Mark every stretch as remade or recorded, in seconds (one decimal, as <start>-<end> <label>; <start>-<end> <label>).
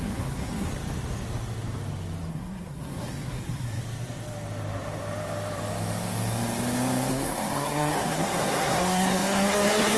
0.0-0.7 remade; 0.7-2.3 recorded; 2.3-3.8 remade; 3.8-7.1 recorded; 7.1-10.0 remade